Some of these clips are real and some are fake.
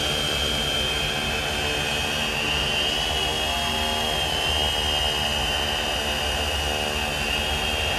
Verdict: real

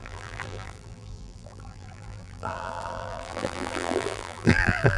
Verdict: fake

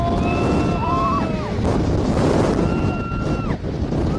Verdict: real